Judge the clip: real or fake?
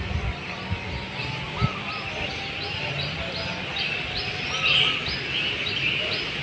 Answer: real